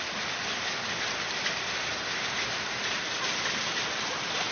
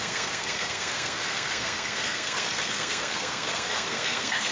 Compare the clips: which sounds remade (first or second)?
second